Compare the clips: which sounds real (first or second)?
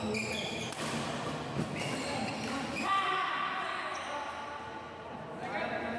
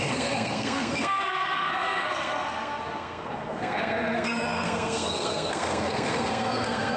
first